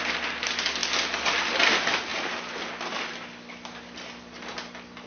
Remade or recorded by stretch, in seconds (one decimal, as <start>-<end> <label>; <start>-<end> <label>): 0.0-5.1 recorded